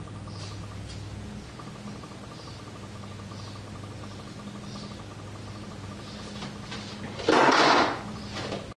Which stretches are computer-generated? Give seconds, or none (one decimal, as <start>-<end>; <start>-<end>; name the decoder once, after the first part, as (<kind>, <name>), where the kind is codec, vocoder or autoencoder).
7.4-8.2 (vocoder, Vocos)